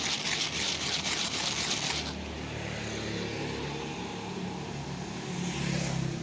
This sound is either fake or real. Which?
real